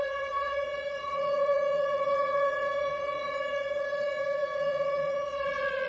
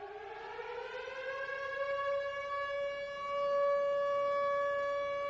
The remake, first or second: first